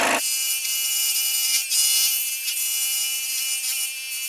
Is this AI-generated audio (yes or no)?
no